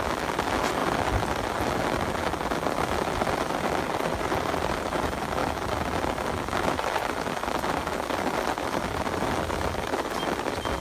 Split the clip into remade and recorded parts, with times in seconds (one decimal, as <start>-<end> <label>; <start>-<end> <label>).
0.0-10.8 recorded